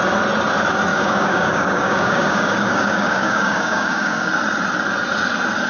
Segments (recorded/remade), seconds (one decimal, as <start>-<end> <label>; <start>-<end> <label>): 0.0-0.9 recorded; 0.9-4.3 remade; 4.3-5.7 recorded